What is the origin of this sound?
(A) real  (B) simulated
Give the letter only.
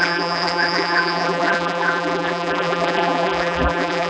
B